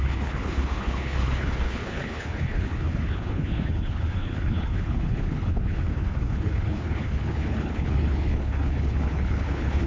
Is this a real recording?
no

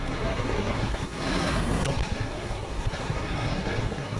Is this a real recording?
no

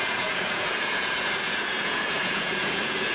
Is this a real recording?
no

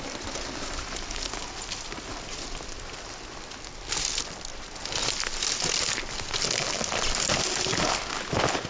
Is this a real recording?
yes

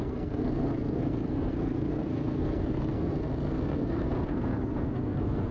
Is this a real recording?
no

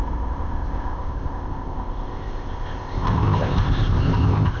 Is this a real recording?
no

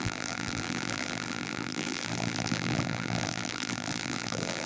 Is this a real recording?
no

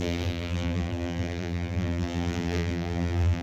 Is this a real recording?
no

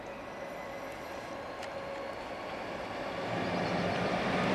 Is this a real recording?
yes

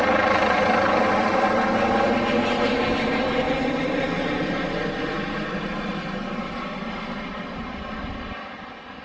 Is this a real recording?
yes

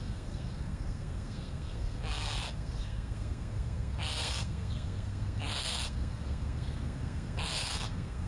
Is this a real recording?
no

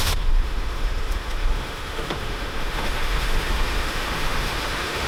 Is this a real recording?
no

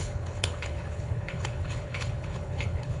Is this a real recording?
no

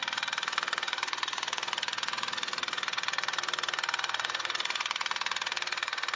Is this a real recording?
no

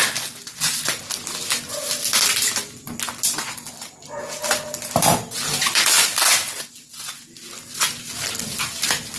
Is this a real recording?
yes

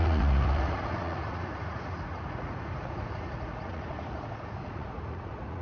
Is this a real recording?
no